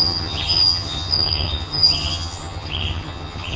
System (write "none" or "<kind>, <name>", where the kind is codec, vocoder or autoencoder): vocoder, HiFi-GAN